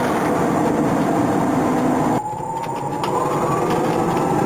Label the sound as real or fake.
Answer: real